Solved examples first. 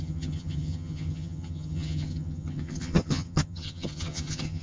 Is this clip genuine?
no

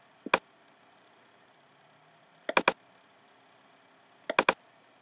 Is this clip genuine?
yes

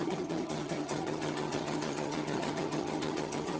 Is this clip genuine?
no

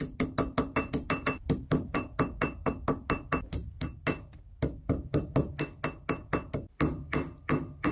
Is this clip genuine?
yes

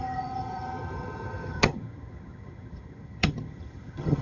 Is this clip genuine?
no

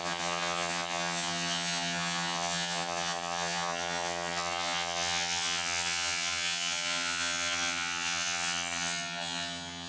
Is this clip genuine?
no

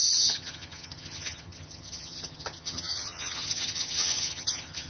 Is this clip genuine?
no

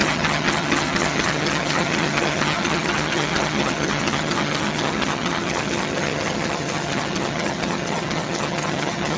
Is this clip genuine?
no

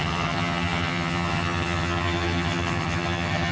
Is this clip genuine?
no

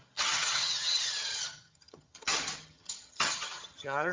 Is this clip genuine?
no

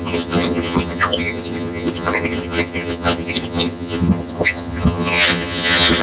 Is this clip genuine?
no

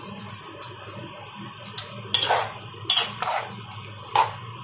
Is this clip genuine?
yes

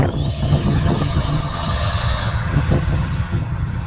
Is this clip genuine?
no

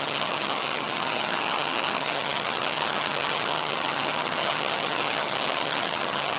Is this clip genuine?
no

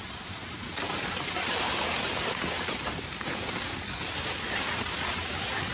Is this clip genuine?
yes